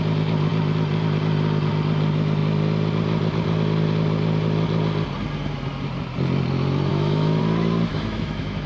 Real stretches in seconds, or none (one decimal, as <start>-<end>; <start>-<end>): 0.0-6.9; 7.4-7.9